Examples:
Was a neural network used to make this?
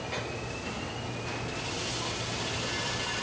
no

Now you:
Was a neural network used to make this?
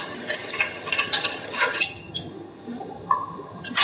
yes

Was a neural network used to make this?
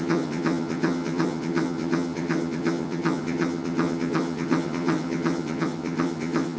yes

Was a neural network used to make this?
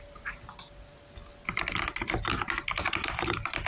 no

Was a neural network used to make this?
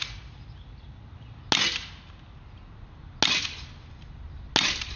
no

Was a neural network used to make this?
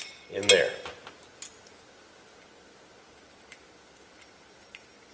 no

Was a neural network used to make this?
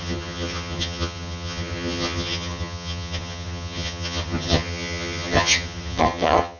yes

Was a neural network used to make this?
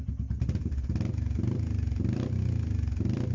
no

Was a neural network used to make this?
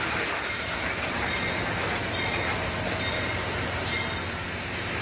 no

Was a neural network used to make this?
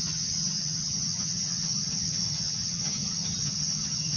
yes